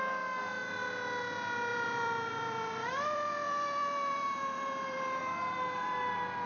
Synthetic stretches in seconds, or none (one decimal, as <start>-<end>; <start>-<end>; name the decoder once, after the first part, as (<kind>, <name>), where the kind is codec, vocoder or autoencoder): 1.7-5.2 (vocoder, BigVGAN v2)